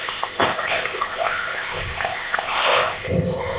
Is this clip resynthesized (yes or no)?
yes